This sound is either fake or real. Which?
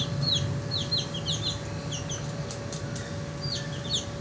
real